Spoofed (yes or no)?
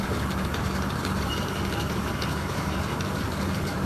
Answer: yes